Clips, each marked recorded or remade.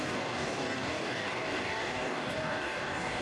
remade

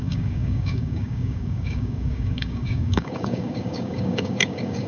remade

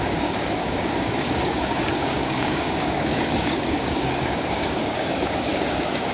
remade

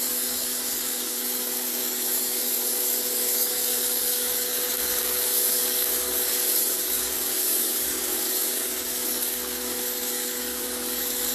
remade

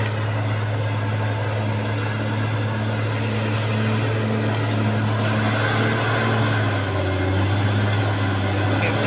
recorded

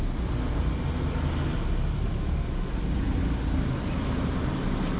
recorded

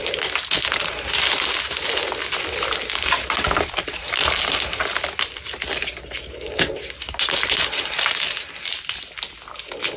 recorded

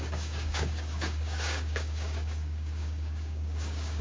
remade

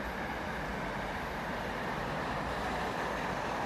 recorded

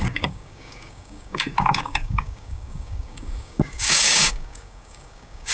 remade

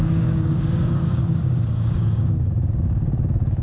remade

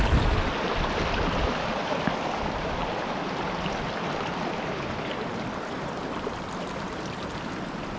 recorded